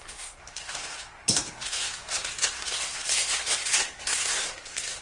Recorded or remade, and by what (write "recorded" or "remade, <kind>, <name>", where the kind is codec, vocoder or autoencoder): remade, codec, SNAC